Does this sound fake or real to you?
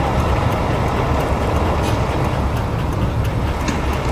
real